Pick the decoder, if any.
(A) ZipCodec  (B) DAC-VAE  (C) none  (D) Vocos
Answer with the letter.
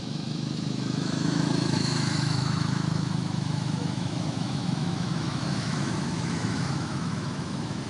B